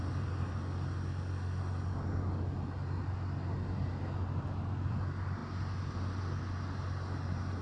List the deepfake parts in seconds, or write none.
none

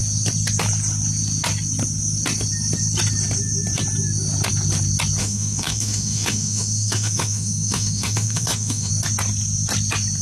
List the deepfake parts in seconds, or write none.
5.2-8.9 (autoencoder, DAC-VAE)

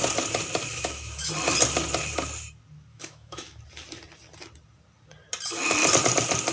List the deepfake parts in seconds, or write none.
0.7-1.3 (autoencoder, DAC-VAE); 2.9-3.6

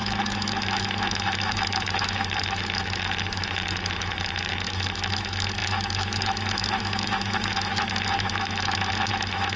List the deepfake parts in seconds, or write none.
0.0-9.6 (autoencoder, DAC-VAE)

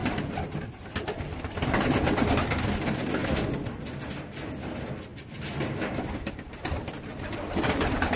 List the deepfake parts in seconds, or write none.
none

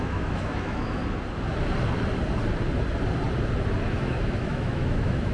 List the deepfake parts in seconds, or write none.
0.0-1.0 (autoencoder, DAC-VAE); 3.9-5.3